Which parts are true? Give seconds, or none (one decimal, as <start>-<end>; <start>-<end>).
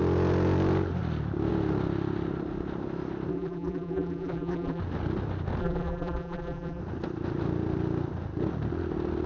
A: 0.0-3.3; 4.8-5.6; 6.8-9.3